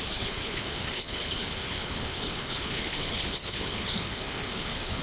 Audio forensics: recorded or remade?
remade